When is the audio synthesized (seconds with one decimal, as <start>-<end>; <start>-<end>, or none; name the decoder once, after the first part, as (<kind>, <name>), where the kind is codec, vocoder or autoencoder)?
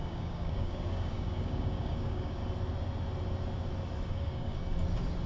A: 0.0-2.4 (codec, DAC); 4.1-4.6